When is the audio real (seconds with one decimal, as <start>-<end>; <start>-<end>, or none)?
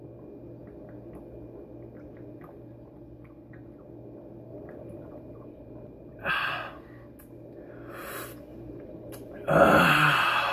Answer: 0.0-4.5; 6.3-8.5; 9.5-10.5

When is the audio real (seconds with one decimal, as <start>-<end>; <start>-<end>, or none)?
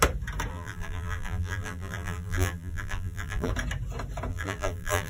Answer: 0.0-0.5; 3.5-4.3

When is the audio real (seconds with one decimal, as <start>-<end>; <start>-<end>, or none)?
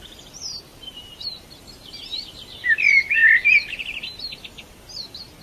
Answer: 0.0-0.7; 1.5-5.4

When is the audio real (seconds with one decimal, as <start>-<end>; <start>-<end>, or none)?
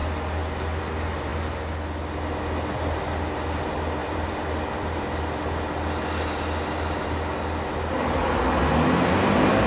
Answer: 0.0-4.0; 5.2-9.7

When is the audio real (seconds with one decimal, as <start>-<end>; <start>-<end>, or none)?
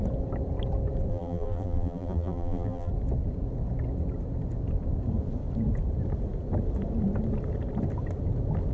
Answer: 0.0-1.1; 2.9-8.7